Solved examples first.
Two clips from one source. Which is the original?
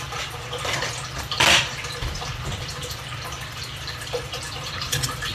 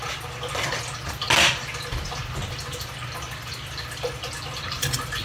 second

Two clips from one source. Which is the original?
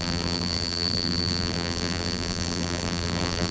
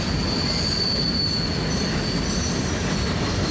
second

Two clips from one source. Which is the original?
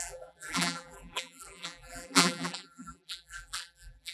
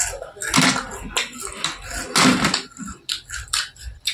second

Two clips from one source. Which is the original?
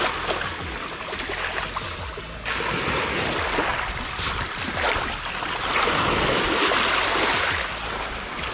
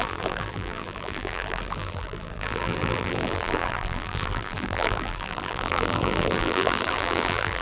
first